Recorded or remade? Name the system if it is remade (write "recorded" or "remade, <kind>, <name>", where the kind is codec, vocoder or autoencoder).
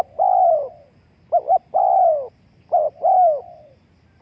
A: recorded